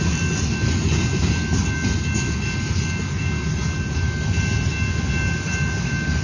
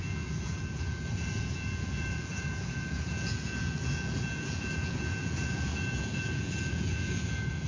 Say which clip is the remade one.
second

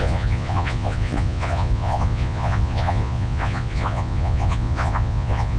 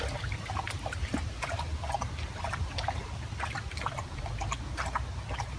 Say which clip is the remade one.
first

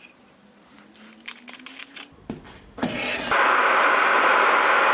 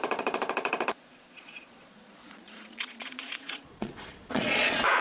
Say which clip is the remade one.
second